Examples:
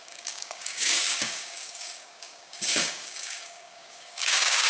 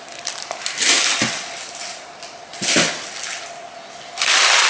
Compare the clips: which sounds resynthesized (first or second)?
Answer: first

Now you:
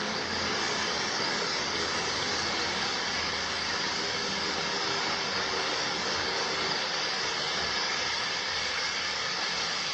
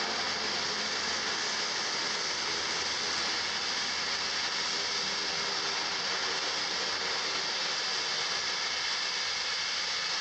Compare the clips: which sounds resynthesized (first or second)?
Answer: first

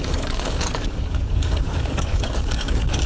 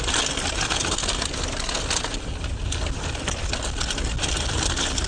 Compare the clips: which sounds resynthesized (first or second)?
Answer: first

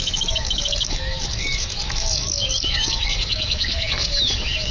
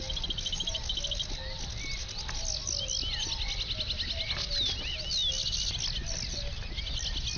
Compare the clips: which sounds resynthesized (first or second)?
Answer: first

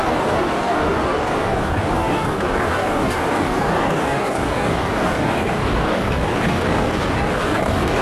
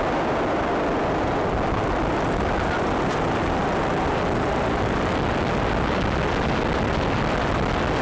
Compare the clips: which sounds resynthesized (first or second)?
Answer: first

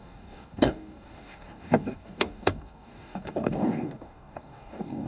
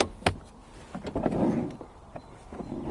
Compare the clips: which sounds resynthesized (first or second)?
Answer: first